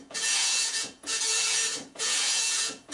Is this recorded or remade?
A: remade